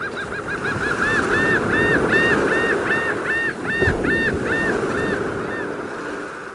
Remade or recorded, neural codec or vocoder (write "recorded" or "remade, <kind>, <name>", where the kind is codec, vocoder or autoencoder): recorded